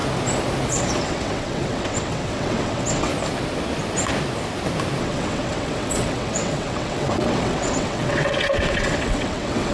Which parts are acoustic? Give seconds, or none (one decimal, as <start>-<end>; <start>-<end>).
0.0-0.7; 3.1-5.0